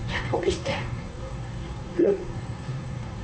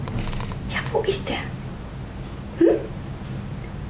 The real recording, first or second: second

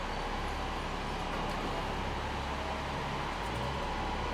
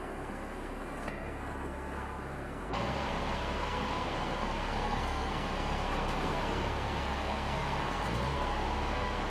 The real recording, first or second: first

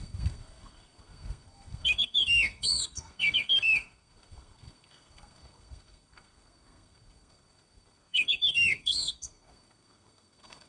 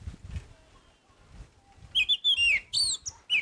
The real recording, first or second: second